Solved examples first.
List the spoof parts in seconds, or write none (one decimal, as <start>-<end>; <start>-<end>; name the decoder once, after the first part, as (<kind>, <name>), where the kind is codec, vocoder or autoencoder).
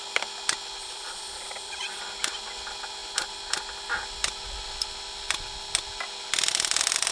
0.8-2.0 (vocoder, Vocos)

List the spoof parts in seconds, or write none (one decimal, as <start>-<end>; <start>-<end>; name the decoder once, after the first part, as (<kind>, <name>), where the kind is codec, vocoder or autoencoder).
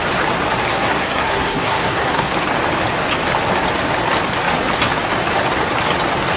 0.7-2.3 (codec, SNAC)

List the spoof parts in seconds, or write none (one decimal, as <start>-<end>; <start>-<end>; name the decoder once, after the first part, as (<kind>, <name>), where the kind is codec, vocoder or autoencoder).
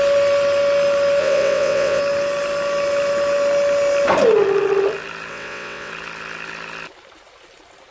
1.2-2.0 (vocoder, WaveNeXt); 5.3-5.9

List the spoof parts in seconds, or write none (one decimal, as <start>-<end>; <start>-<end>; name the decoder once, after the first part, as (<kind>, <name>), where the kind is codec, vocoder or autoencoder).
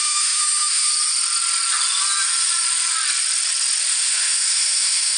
0.0-0.9 (autoencoder, DAC-VAE); 3.9-5.2